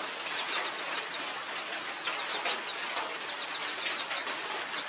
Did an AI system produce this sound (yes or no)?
no